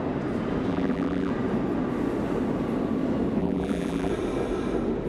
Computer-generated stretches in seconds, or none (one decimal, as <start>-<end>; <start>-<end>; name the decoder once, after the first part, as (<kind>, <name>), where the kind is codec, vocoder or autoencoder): 0.7-1.3 (vocoder, BigVGAN v2); 3.4-4.1